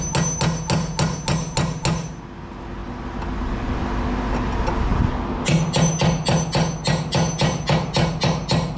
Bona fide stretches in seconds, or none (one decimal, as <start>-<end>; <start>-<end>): 0.0-8.8